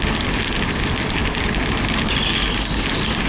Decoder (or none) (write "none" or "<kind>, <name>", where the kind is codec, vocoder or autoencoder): none